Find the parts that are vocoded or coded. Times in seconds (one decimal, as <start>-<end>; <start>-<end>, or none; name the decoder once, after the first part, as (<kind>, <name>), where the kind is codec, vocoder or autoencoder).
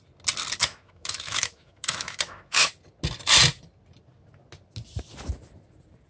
0.6-2.7 (autoencoder, DAC-VAE)